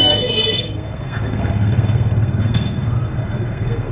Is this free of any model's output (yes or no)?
no